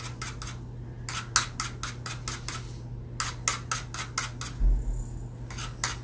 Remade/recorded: recorded